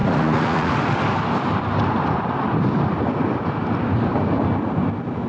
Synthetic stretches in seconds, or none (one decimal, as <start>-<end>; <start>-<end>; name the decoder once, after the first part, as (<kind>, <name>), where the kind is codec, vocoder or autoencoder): 0.0-0.7 (vocoder, Vocos)